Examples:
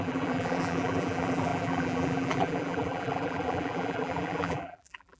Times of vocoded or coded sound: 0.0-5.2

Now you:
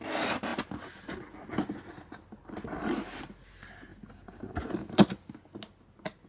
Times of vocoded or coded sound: none

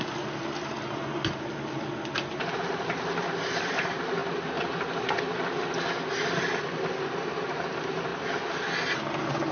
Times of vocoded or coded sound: 0.0-1.1; 2.3-4.2; 7.0-8.1